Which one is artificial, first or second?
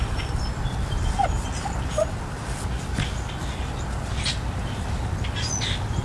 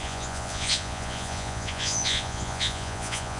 second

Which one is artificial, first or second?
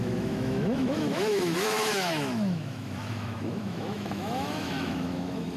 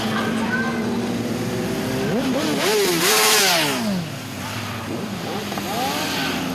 first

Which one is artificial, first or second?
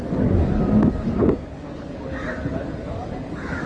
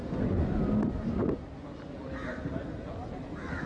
first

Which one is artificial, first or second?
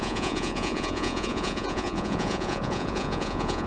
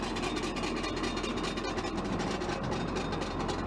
first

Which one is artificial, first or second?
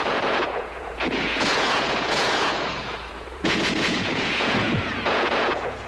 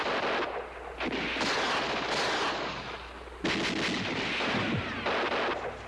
first